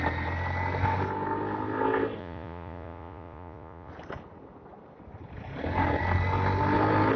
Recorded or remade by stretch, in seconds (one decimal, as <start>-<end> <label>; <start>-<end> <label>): 0.0-2.2 recorded; 2.2-3.9 remade; 3.9-7.2 recorded

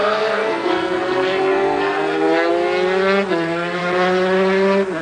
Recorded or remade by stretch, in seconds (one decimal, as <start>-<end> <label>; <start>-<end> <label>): 0.0-2.5 remade; 2.5-3.3 recorded; 3.3-3.8 remade; 3.8-5.0 recorded

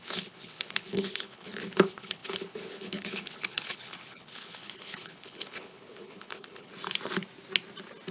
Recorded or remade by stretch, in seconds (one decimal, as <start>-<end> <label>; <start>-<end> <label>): 0.0-6.7 remade; 6.7-8.1 recorded